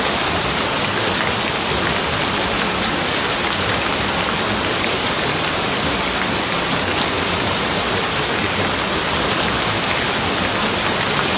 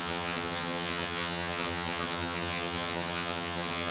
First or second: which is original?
first